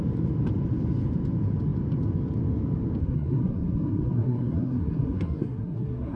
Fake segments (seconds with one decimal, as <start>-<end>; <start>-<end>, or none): 3.0-6.2